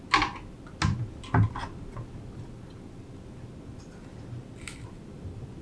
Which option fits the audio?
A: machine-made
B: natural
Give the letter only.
B